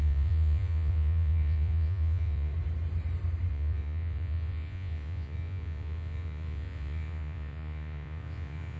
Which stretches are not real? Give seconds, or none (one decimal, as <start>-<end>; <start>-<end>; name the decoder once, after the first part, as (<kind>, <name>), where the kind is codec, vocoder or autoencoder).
0.0-2.5 (vocoder, Vocos); 3.5-8.8